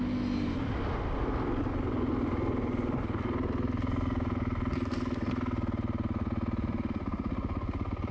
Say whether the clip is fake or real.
real